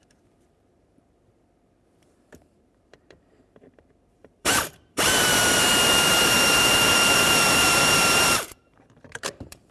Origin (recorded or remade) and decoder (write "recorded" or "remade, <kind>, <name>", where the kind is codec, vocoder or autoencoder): remade, vocoder, BigVGAN v2